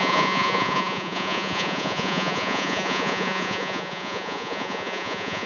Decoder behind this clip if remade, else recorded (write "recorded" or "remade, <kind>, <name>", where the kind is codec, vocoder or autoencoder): remade, vocoder, Vocos